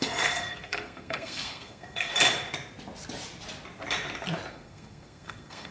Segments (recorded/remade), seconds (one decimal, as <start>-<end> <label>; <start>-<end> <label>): 0.0-2.1 remade; 2.1-4.5 recorded; 4.5-5.7 remade